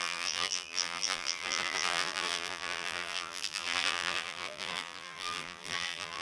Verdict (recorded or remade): remade